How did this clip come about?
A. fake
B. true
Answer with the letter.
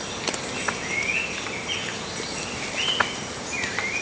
B